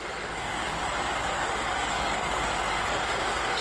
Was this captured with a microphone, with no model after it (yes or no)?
no